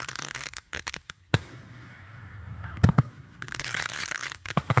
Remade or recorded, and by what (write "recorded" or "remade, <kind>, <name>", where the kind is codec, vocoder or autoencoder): remade, codec, SNAC